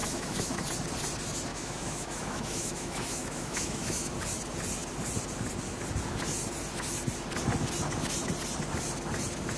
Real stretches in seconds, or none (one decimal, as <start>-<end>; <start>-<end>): 0.6-1.5; 4.1-9.6